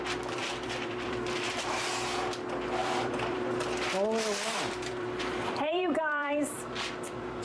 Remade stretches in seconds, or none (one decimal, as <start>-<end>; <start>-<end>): 0.4-1.6; 2.8-7.4